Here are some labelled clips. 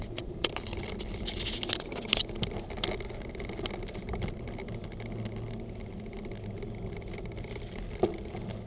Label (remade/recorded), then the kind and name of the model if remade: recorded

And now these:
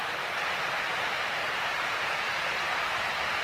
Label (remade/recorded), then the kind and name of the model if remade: recorded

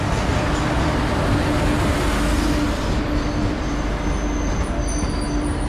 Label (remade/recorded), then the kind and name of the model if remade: recorded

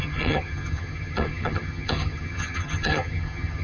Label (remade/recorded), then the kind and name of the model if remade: remade, vocoder, HiFi-GAN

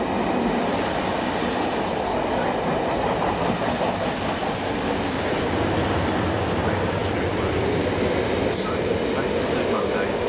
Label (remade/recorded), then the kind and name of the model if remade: recorded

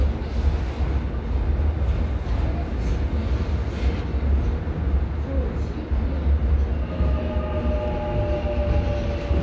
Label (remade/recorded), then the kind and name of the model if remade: recorded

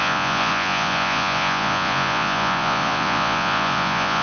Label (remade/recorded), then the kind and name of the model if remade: remade, vocoder, Vocos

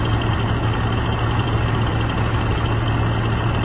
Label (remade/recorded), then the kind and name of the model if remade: recorded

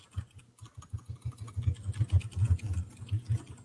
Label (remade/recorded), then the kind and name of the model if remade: recorded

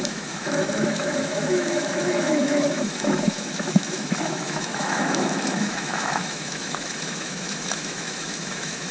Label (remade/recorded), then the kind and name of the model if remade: remade, autoencoder, DAC-VAE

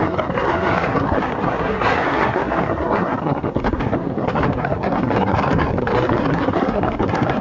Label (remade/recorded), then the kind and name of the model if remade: remade, codec, SNAC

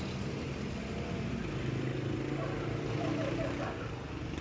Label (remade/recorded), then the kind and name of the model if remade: recorded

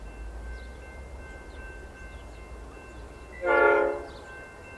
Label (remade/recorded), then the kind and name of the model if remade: recorded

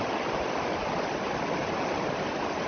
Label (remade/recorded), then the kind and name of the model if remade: recorded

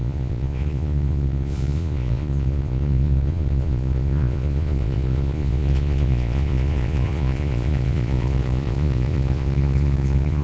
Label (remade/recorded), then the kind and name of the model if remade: remade, vocoder, Vocos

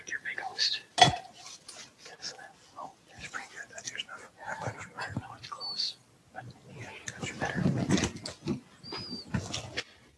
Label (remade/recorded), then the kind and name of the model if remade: recorded